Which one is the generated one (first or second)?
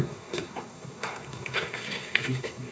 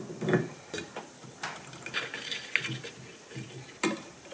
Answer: first